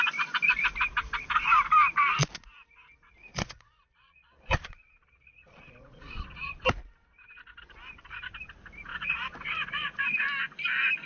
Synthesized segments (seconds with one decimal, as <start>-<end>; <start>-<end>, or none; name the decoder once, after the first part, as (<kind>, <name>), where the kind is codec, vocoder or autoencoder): 3.3-6.6 (vocoder, Vocos); 8.9-10.0

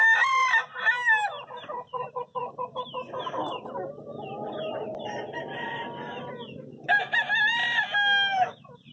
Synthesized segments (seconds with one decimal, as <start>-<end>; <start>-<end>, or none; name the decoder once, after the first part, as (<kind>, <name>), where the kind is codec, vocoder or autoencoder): none

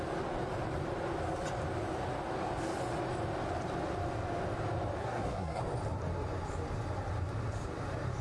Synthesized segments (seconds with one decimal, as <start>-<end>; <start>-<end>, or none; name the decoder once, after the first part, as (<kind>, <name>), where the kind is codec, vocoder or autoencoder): 5.0-5.6 (codec, SNAC)

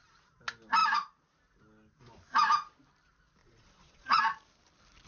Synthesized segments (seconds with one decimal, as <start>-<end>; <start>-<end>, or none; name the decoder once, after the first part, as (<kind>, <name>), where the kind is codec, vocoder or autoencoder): 3.4-4.2 (vocoder, Vocos)

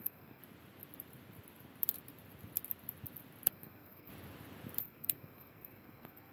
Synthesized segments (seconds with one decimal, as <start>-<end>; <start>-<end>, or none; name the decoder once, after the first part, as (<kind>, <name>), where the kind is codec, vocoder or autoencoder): 0.0-0.4 (codec, SNAC); 3.5-4.1; 4.8-6.3

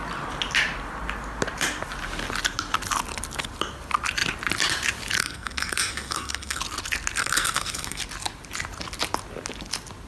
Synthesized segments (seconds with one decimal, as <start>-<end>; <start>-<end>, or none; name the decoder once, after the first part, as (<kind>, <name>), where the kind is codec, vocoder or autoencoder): 5.2-6.6 (codec, SNAC); 7.2-8.0

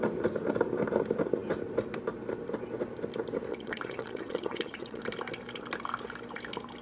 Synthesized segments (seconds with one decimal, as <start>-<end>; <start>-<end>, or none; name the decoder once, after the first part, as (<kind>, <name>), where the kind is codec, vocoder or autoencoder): 3.5-5.0 (vocoder, Vocos)

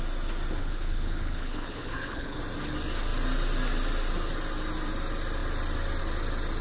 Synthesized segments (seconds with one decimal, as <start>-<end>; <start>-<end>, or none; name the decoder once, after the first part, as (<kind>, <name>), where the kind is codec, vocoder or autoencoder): 0.6-2.4 (codec, HILCodec)